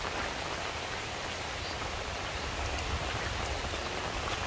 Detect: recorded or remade recorded